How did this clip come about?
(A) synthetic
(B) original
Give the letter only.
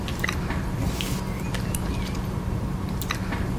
B